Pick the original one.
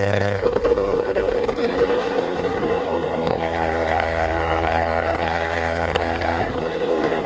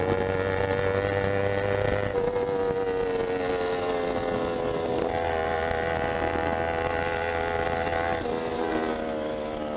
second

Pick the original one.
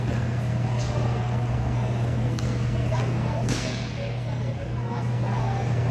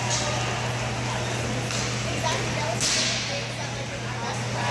second